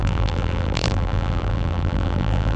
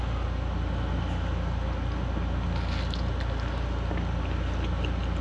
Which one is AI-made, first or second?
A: first